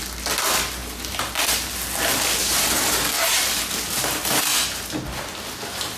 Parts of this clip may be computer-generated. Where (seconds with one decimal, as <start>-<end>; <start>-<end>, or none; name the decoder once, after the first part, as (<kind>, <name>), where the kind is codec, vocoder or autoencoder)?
none